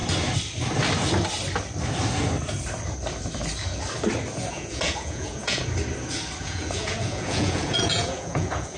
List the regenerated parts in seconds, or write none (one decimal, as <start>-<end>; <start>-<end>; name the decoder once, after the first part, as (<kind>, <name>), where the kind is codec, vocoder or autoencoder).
4.5-5.6 (vocoder, Vocos); 6.4-8.8